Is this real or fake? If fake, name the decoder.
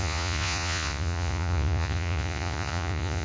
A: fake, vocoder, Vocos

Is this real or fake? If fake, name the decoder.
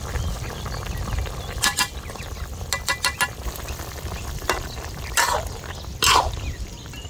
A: real